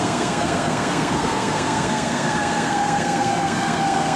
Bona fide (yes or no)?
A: no